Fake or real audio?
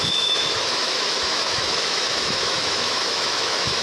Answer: fake